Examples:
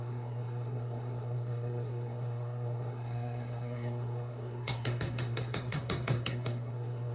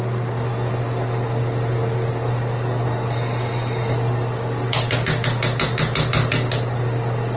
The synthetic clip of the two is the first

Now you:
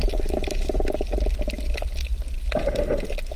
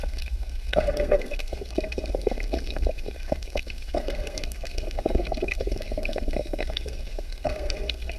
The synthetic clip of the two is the second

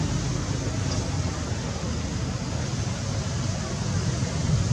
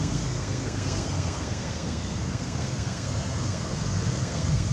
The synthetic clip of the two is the second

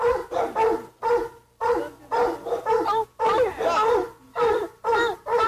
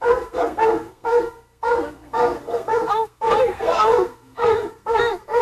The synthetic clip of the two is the second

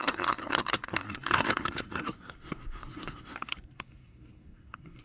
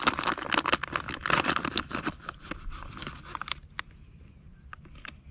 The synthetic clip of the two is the first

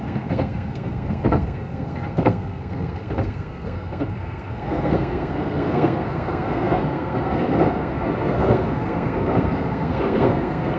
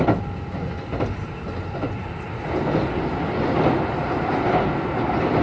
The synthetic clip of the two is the first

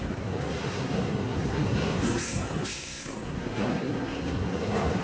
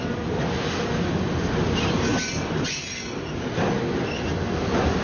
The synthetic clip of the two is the first